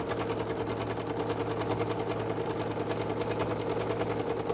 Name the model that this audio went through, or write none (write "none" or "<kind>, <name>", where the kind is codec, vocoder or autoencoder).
none